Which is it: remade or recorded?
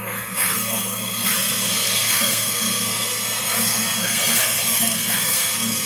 remade